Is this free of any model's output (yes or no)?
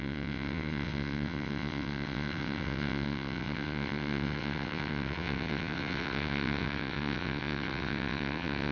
no